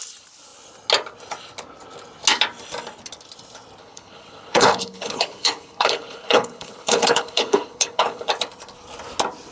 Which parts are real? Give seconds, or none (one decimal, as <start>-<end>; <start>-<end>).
0.0-3.8; 8.3-9.5